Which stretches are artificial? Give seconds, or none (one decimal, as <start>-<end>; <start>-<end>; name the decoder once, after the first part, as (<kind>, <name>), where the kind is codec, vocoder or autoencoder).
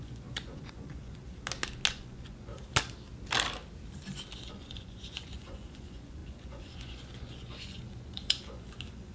0.0-1.2 (vocoder, Vocos); 1.9-2.5; 4.5-9.1